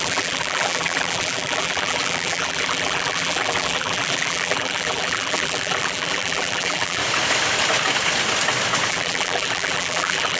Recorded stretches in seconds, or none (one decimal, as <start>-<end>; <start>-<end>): 7.0-8.9